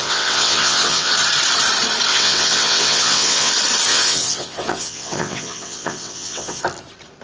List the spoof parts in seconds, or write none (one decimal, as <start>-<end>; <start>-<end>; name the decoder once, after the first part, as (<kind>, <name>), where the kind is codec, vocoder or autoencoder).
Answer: 0.0-1.1 (vocoder, WaveNeXt); 2.1-3.5; 3.9-6.6